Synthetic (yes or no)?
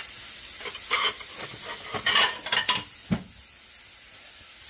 no